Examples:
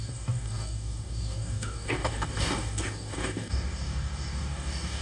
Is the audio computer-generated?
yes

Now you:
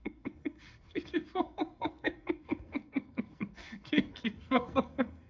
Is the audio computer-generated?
yes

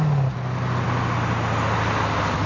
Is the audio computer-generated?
no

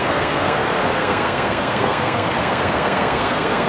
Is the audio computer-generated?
yes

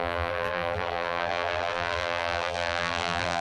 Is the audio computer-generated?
yes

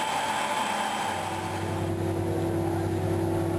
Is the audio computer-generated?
no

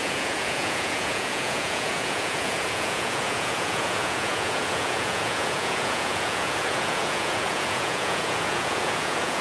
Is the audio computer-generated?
yes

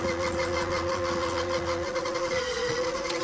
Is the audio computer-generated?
yes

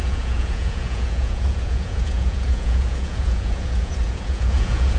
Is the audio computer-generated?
yes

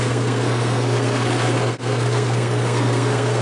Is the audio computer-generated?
yes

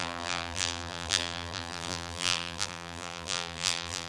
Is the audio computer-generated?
yes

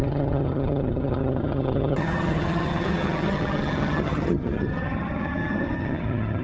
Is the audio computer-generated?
yes